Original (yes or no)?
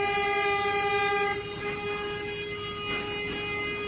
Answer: yes